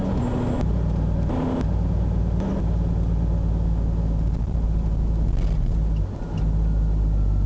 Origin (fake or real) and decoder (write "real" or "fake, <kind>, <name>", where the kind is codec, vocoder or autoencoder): real